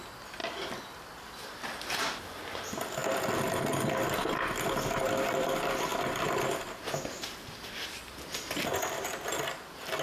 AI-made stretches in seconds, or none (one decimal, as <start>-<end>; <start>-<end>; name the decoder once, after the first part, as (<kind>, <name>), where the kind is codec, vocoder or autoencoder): 0.0-0.4 (vocoder, BigVGAN v2); 2.4-3.0; 3.9-10.0